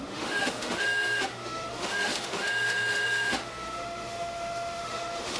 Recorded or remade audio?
remade